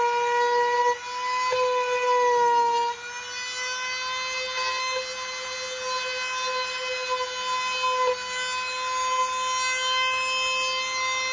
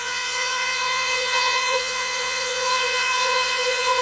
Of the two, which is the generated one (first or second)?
second